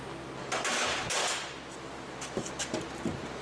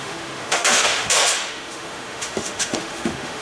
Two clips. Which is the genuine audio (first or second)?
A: first